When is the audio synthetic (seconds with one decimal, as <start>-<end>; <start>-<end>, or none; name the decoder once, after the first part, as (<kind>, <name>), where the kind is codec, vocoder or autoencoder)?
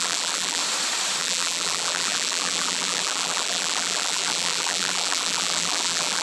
0.0-0.6 (vocoder, BigVGAN v2); 1.2-6.2